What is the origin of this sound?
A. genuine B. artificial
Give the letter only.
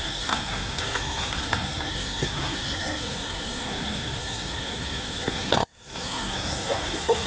B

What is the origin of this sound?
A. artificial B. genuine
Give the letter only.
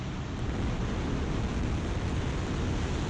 B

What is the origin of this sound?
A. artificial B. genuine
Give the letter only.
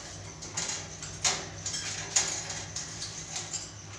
B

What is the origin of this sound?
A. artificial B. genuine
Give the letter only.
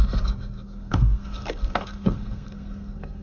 A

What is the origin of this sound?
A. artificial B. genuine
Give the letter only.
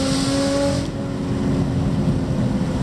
B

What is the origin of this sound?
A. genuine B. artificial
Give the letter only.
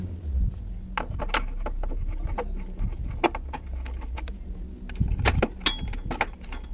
A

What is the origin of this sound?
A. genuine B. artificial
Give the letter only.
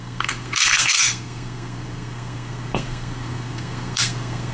B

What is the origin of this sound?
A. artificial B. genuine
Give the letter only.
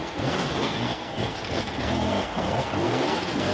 A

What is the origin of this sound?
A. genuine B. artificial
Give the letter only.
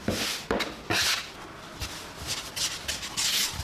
A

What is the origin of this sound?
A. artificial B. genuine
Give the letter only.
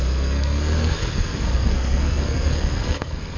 A